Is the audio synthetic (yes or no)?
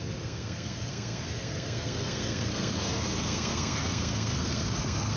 yes